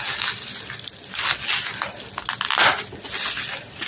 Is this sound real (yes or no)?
yes